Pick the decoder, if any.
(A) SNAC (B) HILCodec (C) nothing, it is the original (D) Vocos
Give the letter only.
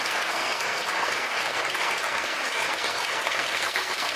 A